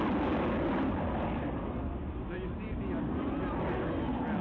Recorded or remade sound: recorded